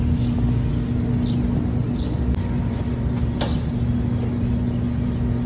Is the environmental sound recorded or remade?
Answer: recorded